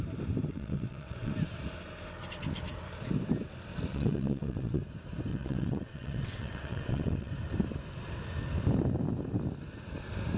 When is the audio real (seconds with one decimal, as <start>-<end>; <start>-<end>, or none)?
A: 0.0-0.5; 1.3-3.9; 4.8-5.3; 7.3-10.4